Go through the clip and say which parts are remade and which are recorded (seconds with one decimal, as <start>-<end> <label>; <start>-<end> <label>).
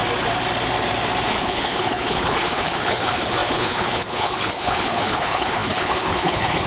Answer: 0.0-1.3 recorded; 1.3-6.7 remade